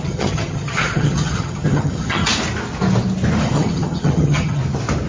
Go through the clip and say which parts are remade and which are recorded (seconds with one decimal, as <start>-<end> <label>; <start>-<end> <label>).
0.0-2.3 remade; 2.3-3.4 recorded; 3.4-4.6 remade; 4.6-5.1 recorded